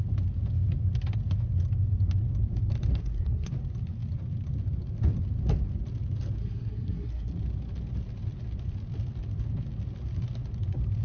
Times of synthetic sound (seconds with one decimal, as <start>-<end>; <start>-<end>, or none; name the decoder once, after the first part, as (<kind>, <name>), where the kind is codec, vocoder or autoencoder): 3.0-3.5 (codec, SNAC); 6.4-7.3